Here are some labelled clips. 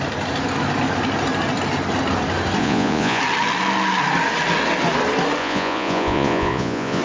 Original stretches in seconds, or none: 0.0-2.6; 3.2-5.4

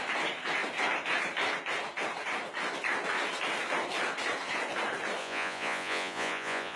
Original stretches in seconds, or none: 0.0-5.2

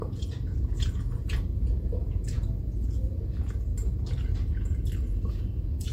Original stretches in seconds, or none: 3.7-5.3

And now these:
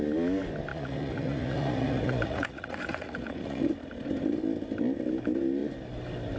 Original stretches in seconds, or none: 0.0-0.7; 3.7-6.4

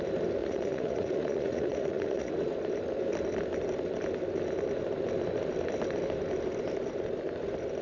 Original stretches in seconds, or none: 0.0-0.4; 2.3-7.8

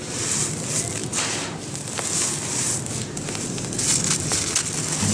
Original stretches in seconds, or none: 0.0-5.1

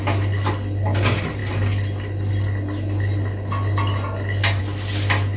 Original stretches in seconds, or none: 0.0-5.4